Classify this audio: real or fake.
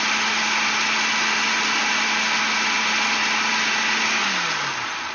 real